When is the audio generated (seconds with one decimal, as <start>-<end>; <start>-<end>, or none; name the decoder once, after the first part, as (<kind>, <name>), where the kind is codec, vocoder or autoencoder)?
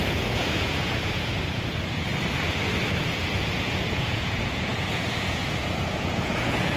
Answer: 0.0-2.1 (vocoder, Vocos); 3.1-6.8